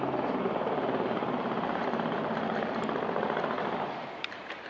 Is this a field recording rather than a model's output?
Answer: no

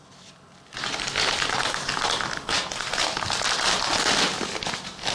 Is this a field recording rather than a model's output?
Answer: yes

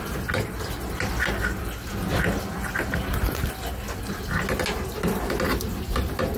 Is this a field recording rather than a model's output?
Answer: yes